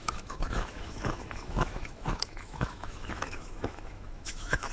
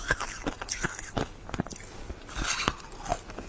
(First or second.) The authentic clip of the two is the second